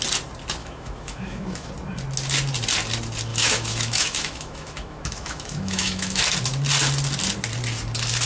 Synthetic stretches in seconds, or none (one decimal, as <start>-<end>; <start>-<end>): 0.6-1.7; 3.3-6.2